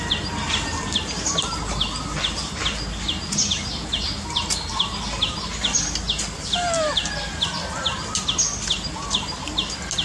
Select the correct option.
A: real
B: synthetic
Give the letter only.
A